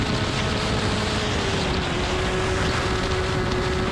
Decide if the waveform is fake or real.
real